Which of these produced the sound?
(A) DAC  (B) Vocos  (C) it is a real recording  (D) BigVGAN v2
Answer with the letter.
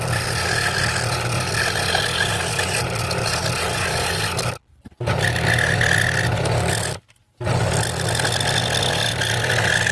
C